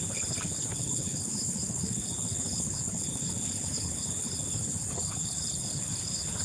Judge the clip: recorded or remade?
remade